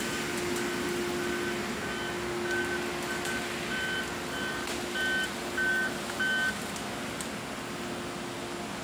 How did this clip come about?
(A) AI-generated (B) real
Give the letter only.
B